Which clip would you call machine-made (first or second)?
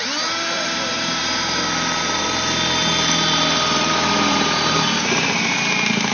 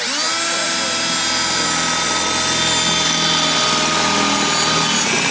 first